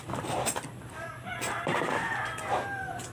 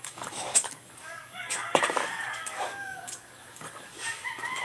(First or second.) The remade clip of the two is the second